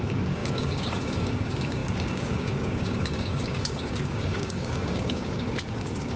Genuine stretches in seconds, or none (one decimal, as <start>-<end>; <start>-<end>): none